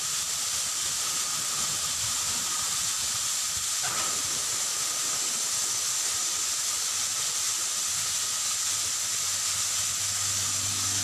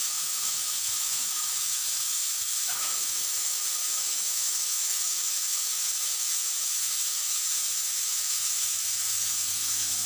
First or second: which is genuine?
first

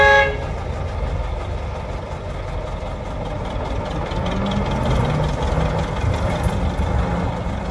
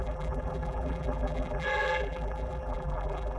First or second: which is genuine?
first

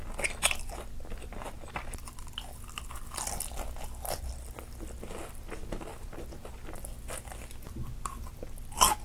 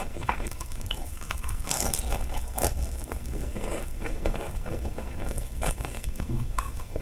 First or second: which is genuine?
first